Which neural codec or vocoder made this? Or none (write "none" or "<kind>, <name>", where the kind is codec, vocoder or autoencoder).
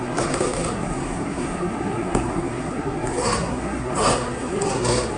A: codec, SNAC